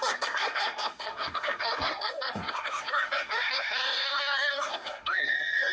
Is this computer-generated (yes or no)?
yes